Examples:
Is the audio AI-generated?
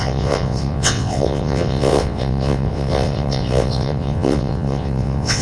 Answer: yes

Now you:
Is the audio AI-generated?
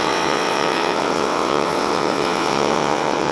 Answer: yes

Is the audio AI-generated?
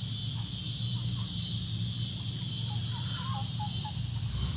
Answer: no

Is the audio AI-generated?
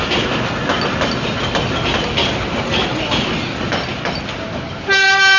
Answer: no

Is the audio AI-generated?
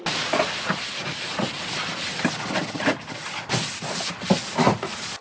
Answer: no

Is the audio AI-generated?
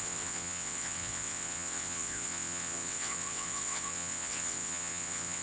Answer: yes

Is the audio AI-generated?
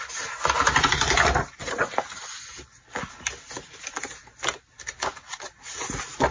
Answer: no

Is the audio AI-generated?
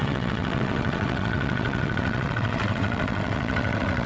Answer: yes